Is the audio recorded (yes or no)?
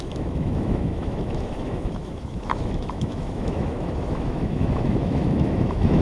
no